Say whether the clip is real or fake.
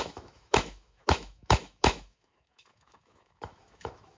fake